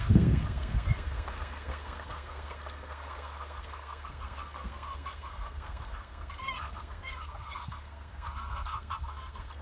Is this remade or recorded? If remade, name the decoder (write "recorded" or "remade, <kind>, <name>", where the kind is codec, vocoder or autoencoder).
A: remade, codec, SNAC